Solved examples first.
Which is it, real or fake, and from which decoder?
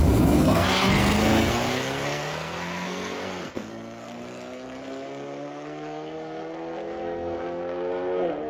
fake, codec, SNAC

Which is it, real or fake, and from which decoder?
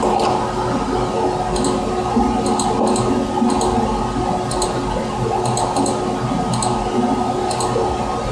real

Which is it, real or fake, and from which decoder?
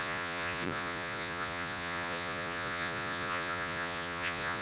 fake, vocoder, Vocos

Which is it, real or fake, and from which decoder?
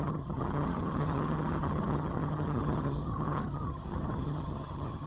fake, vocoder, HiFi-GAN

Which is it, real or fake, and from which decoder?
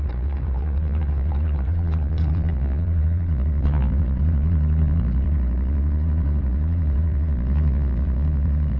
fake, vocoder, Vocos